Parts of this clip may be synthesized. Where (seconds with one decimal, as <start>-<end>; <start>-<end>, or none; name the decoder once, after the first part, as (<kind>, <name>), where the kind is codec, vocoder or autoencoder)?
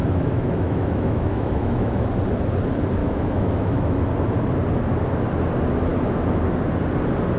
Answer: 0.0-2.1 (autoencoder, DAC-VAE); 3.0-4.0